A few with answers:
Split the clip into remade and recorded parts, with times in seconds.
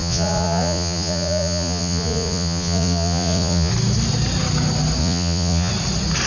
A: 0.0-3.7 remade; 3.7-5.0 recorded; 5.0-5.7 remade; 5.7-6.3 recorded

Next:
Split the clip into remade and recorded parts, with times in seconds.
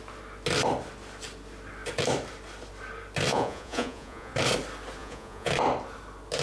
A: 0.0-3.3 recorded; 3.3-4.3 remade; 4.3-5.0 recorded; 5.0-5.5 remade; 5.5-6.4 recorded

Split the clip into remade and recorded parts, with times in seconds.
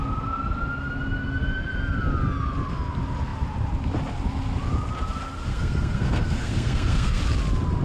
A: 0.0-5.5 recorded; 5.5-7.2 remade; 7.2-7.8 recorded